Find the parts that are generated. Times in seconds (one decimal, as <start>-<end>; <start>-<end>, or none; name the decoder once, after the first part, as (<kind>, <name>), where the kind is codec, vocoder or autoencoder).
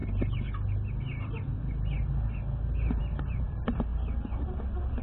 3.9-4.6 (vocoder, BigVGAN v2)